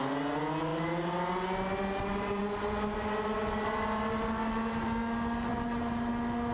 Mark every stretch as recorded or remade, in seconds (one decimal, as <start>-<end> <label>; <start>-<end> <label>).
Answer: 0.0-5.5 recorded; 5.5-6.1 remade; 6.1-6.5 recorded